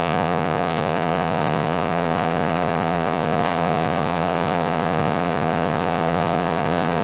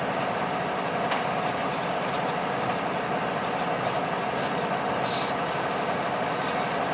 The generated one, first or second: first